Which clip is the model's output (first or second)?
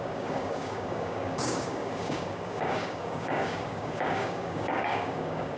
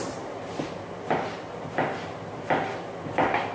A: first